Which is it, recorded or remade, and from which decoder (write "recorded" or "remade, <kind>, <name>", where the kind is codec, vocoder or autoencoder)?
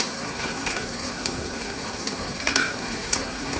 remade, codec, SNAC